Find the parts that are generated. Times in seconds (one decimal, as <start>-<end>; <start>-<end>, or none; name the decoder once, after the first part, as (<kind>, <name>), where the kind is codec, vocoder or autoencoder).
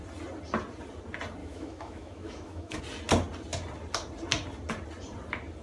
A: 1.4-2.8 (autoencoder, DAC-VAE)